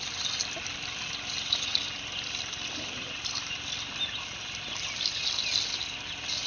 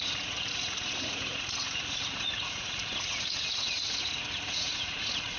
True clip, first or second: first